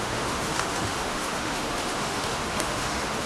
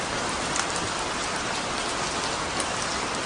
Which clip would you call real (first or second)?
second